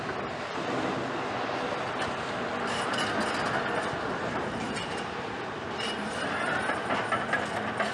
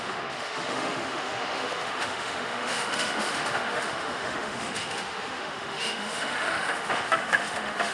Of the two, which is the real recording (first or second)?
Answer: first